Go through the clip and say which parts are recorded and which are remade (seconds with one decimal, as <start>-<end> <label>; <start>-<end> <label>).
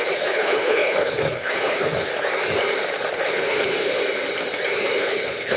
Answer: 0.0-2.1 remade; 2.1-3.1 recorded; 3.1-4.0 remade; 4.0-5.0 recorded; 5.0-5.6 remade